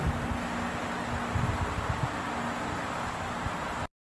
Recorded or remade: remade